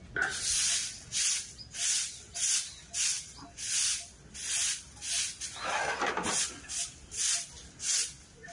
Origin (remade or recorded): recorded